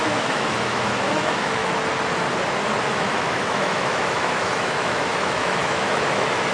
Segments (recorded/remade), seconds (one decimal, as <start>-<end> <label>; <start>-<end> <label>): 0.0-1.6 remade; 1.6-2.9 recorded; 2.9-6.5 remade